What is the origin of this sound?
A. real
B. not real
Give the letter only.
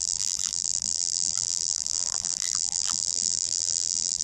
B